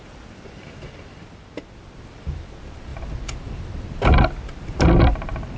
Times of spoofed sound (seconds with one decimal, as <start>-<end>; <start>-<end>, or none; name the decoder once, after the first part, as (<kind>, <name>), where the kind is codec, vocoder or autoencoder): none